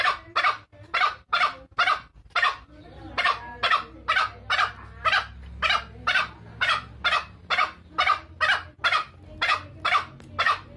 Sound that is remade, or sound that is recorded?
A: recorded